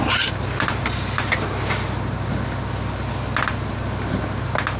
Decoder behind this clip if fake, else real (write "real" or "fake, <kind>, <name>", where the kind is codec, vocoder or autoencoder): real